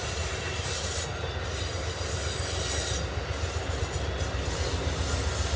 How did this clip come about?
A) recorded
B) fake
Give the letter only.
A